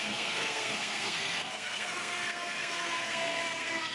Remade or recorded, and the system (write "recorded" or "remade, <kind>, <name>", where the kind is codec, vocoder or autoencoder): remade, codec, SNAC